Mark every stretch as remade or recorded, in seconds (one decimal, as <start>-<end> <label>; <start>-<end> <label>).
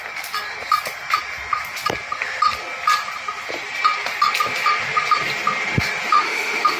0.0-6.1 recorded; 6.1-6.8 remade